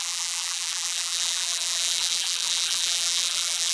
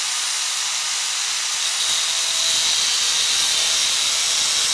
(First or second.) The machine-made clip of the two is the first